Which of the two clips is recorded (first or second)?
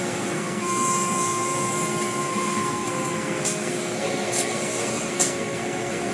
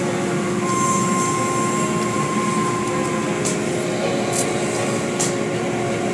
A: second